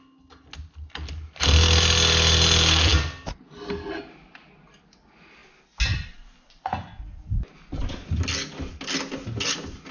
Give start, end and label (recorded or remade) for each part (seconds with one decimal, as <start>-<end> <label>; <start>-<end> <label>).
0.0-9.9 recorded